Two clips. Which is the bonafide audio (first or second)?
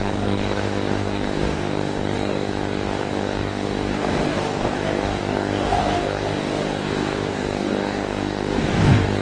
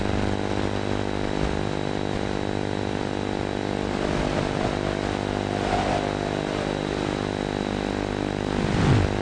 second